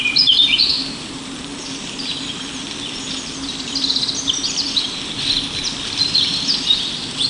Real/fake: fake